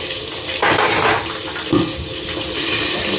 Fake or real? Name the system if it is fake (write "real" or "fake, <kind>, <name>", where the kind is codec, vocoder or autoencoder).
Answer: real